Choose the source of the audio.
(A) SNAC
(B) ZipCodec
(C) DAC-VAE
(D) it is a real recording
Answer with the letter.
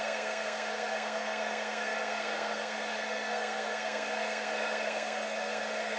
A